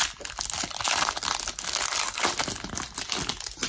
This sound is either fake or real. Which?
real